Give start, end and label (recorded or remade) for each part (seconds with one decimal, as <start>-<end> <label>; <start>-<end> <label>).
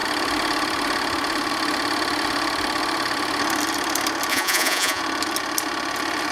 0.0-4.3 recorded; 4.3-5.0 remade; 5.0-6.3 recorded